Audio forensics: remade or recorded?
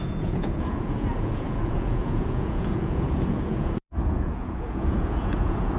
remade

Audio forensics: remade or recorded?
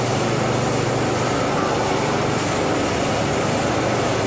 recorded